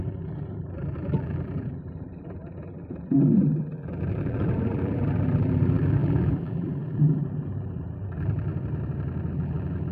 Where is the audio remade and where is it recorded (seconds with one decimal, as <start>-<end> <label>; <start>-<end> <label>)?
0.0-8.5 remade; 8.5-9.3 recorded; 9.3-9.9 remade